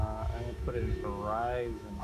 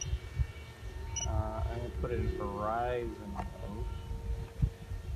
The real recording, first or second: second